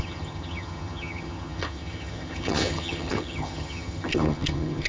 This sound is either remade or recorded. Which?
remade